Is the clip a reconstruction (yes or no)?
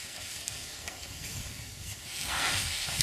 yes